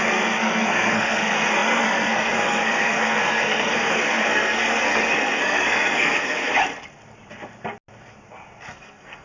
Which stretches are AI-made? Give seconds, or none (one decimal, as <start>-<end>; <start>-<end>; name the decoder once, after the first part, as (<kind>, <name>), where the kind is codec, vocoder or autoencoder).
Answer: 0.0-6.5 (codec, SNAC); 8.7-9.2